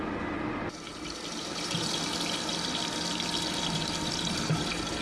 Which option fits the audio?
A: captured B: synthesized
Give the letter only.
B